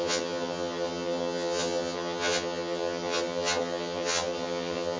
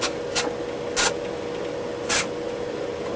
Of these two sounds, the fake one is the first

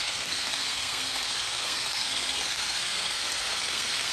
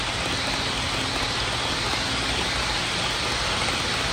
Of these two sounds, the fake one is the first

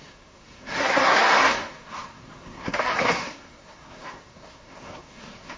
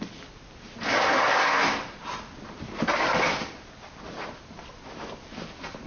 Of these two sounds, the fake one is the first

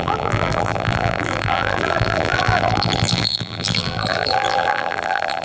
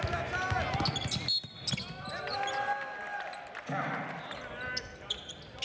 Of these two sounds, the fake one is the first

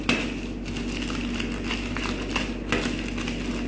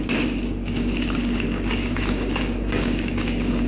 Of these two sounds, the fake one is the second